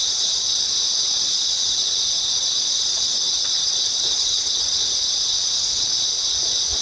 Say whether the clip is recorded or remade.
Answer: remade